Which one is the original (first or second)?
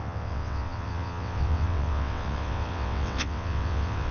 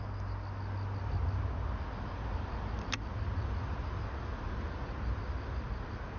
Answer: second